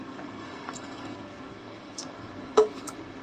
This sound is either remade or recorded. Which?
remade